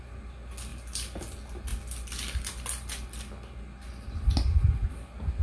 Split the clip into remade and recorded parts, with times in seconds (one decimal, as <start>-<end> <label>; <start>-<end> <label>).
0.0-5.4 recorded